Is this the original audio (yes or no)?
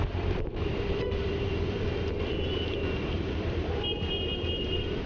no